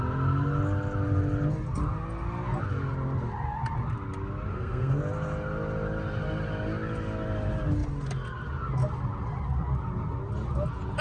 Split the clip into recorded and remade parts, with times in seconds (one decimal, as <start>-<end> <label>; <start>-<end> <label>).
0.0-4.5 recorded; 4.5-5.0 remade; 5.0-11.0 recorded